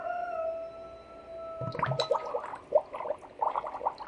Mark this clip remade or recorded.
recorded